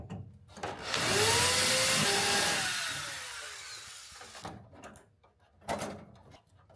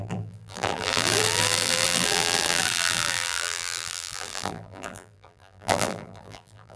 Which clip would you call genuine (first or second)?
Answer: first